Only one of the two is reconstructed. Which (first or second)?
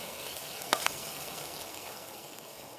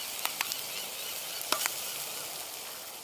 first